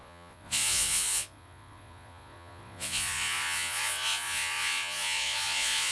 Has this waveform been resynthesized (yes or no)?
yes